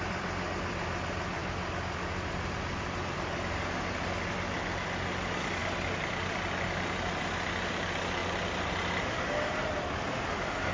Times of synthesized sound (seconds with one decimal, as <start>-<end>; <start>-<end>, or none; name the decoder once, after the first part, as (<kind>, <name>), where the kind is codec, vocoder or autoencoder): none